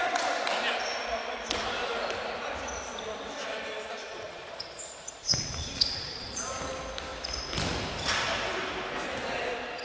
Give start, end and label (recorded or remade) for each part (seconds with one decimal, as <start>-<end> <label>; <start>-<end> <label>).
0.0-4.0 recorded; 4.0-6.6 remade; 6.6-9.8 recorded